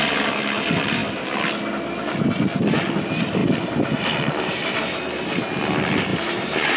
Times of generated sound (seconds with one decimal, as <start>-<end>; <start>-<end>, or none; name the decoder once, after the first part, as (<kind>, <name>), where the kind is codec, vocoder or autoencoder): 6.1-6.8 (vocoder, BigVGAN v2)